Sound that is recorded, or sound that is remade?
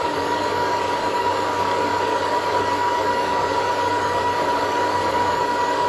remade